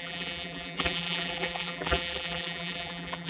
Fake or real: fake